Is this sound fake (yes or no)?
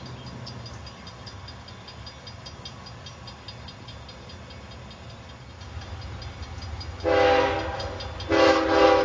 no